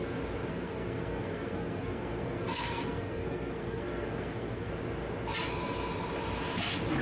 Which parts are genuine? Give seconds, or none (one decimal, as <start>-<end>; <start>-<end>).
0.0-0.5; 4.7-7.0